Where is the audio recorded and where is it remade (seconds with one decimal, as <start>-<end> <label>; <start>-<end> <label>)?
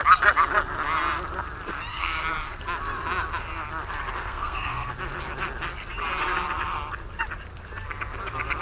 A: 0.0-1.9 recorded; 1.9-2.6 remade; 2.6-4.2 recorded; 4.2-4.9 remade; 4.9-8.6 recorded